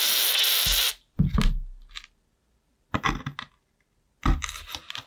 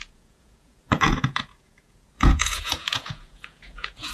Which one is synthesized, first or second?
second